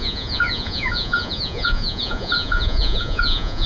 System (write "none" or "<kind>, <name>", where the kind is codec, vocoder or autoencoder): vocoder, Vocos